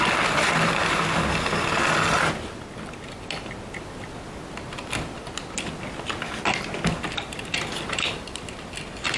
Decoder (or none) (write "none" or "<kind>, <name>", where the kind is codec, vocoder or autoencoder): none